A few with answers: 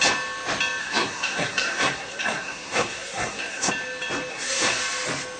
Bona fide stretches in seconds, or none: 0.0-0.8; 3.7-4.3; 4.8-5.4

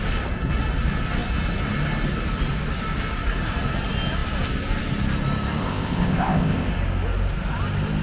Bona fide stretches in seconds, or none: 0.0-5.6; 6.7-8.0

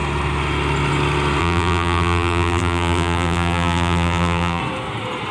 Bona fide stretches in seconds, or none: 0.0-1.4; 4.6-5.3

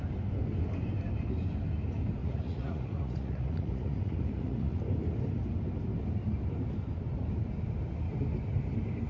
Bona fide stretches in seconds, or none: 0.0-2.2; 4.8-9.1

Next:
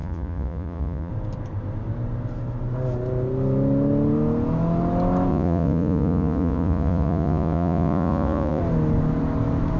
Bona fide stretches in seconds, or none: 1.1-5.3; 8.6-9.8

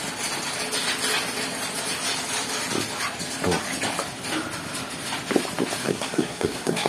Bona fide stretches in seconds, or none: 0.0-5.8